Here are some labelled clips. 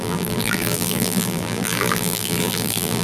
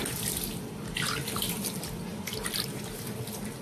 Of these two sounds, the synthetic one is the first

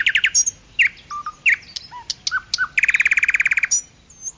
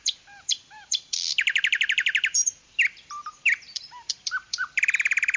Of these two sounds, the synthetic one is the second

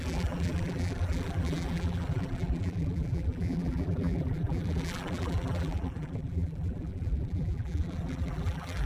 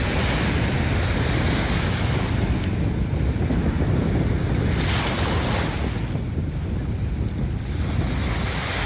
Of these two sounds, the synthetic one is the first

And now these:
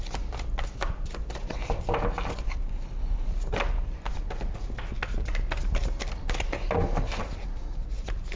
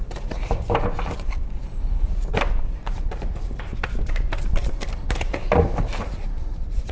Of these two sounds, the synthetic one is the second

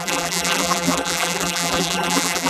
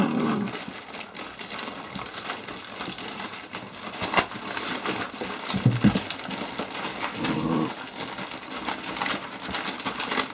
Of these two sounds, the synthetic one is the first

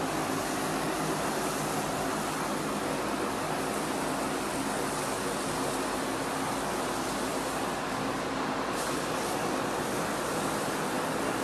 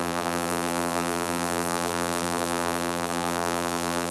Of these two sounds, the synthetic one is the second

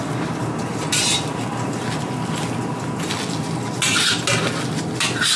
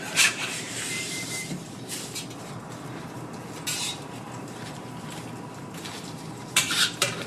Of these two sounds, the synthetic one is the second